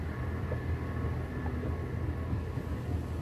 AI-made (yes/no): no